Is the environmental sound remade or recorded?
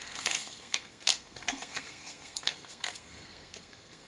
remade